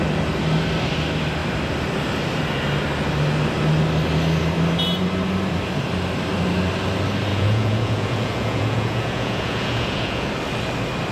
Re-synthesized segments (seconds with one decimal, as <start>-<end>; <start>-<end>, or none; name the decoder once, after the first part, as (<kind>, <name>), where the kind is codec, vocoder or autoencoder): 7.3-10.3 (vocoder, Vocos)